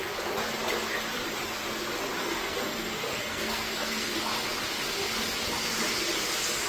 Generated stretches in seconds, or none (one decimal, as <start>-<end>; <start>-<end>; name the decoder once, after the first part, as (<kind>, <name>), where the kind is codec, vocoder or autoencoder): 2.2-4.1 (codec, SNAC)